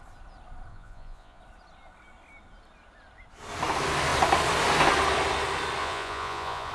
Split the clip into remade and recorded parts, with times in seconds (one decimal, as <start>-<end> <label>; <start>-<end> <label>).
0.0-0.7 recorded; 0.7-1.4 remade; 1.4-5.8 recorded; 5.8-6.7 remade